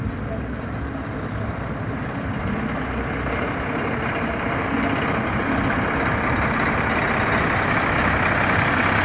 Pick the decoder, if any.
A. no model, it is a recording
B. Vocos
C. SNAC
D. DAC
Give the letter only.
A